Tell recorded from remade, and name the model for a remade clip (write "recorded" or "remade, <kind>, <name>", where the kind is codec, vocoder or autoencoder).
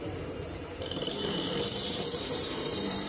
remade, vocoder, BigVGAN v2